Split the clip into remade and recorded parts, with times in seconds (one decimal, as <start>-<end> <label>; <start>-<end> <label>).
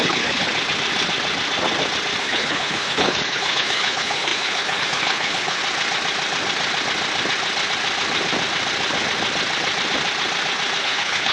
0.0-0.5 remade; 0.5-2.2 recorded; 2.2-5.6 remade; 5.6-10.8 recorded; 10.8-11.3 remade